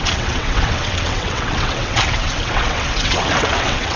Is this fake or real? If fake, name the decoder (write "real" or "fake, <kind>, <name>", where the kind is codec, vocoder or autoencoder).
fake, vocoder, WaveNeXt